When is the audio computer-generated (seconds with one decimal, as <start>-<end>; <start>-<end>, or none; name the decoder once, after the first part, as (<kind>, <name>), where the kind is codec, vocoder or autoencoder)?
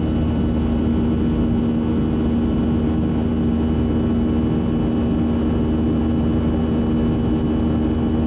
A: none